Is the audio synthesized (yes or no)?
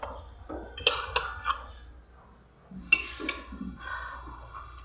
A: no